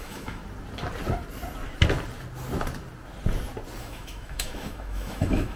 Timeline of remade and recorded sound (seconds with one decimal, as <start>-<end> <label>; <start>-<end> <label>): 0.0-0.4 remade; 0.4-3.8 recorded; 3.8-5.6 remade